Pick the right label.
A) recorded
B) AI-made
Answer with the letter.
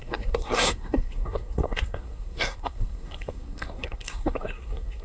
B